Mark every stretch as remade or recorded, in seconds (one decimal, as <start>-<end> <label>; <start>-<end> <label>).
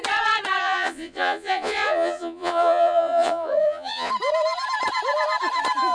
0.0-0.6 recorded; 0.6-4.1 remade; 4.1-5.9 recorded